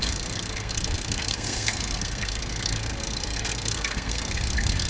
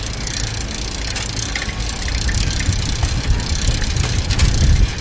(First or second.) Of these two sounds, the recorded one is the second